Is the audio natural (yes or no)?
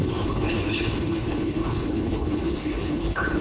no